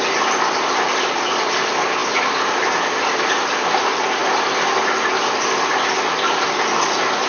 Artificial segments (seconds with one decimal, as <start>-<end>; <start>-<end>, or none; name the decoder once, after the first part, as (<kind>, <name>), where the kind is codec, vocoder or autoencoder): none